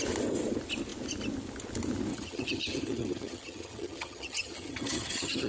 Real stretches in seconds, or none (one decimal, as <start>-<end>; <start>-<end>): 0.0-2.1